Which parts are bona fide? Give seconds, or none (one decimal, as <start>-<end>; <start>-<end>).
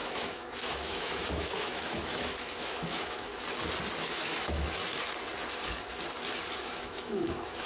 3.3-4.0; 4.8-6.6